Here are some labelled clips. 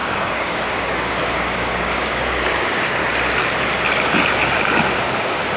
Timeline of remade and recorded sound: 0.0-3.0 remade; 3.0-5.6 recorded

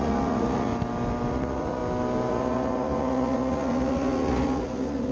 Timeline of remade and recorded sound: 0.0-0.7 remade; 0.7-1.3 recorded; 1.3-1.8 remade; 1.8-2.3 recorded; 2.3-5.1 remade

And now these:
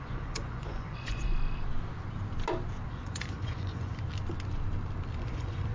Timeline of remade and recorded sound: 0.0-1.3 remade; 1.3-2.9 recorded; 2.9-3.9 remade; 3.9-5.2 recorded; 5.2-5.7 remade

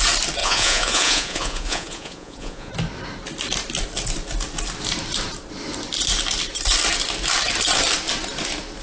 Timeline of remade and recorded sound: 0.0-0.4 recorded; 0.4-2.7 remade; 2.7-8.8 recorded

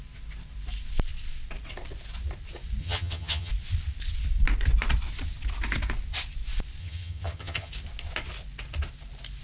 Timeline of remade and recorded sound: 0.0-2.8 recorded; 2.8-3.5 remade; 3.5-6.8 recorded; 6.8-7.7 remade; 7.7-9.4 recorded